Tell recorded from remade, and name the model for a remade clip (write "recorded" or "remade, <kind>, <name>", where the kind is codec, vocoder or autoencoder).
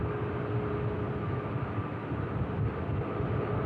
recorded